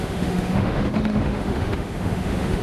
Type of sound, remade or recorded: remade